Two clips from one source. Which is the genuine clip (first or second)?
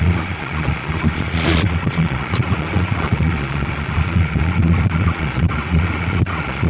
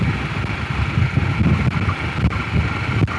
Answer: second